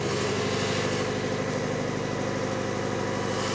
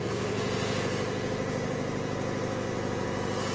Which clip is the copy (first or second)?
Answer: second